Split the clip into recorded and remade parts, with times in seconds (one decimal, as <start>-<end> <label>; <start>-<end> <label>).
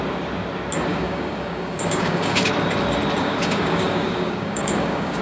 0.0-0.9 recorded; 0.9-2.5 remade; 2.5-3.2 recorded; 3.2-5.2 remade